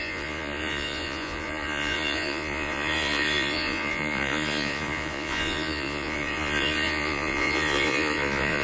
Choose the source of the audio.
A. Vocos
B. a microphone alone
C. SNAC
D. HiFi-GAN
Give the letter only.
A